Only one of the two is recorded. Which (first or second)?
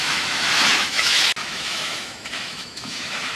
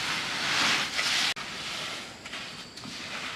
second